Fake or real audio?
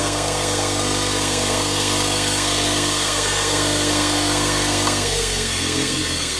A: fake